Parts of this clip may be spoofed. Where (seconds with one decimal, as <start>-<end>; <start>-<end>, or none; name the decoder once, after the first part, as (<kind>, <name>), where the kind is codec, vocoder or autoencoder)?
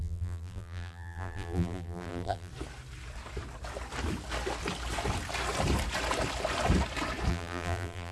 0.0-2.5 (vocoder, BigVGAN v2); 7.3-8.1